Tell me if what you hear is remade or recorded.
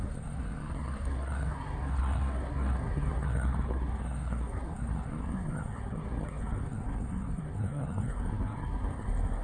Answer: remade